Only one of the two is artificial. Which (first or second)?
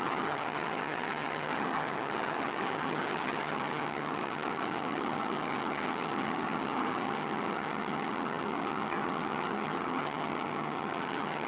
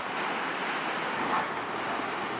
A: first